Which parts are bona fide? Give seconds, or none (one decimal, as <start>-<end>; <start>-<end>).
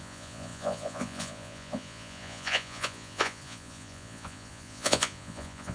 none